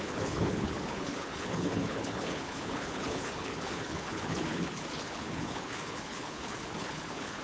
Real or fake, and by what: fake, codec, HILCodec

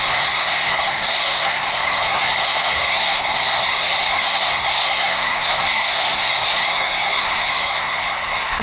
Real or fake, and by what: fake, codec, SNAC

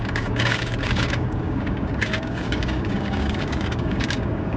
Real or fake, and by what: fake, codec, DAC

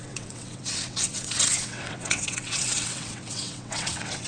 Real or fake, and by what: fake, vocoder, WaveNeXt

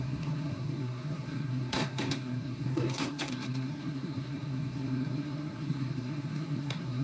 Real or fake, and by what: fake, codec, SNAC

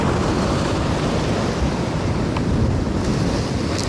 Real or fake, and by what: real